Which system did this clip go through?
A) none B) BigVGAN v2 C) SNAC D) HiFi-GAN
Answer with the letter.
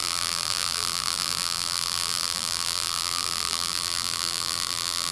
B